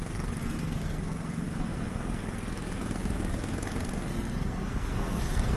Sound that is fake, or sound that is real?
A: fake